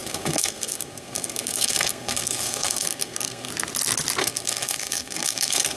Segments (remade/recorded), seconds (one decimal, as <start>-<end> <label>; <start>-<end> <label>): 0.0-3.5 remade; 3.5-4.2 recorded; 4.2-5.8 remade